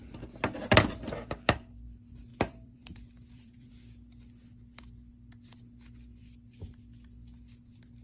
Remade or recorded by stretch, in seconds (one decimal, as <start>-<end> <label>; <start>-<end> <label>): 0.0-2.3 recorded; 2.3-3.7 remade; 3.7-8.0 recorded

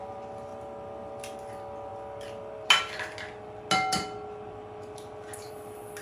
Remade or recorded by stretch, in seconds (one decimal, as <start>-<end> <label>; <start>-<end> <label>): 0.0-6.0 recorded

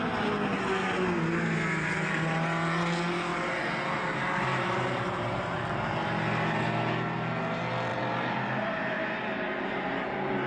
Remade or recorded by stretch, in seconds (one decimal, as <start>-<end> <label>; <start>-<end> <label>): 0.0-3.3 recorded; 3.3-4.1 remade; 4.1-4.5 recorded; 4.5-5.6 remade; 5.6-7.9 recorded; 7.9-10.5 remade

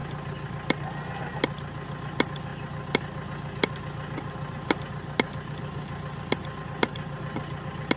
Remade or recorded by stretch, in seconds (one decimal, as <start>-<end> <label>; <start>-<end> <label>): 0.0-8.0 recorded

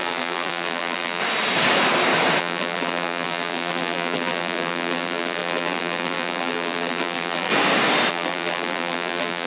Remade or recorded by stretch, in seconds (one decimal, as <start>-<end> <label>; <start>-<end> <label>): 0.0-1.2 remade; 1.2-2.4 recorded; 2.4-7.5 remade; 7.5-8.1 recorded; 8.1-9.5 remade

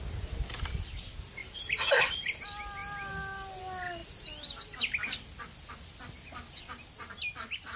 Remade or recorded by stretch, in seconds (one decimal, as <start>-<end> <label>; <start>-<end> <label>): 0.0-1.4 recorded; 1.4-2.2 remade; 2.2-7.8 recorded

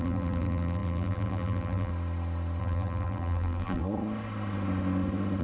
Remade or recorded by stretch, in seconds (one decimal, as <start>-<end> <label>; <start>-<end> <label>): 0.0-1.9 remade; 1.9-2.6 recorded; 2.6-3.8 remade; 3.8-5.4 recorded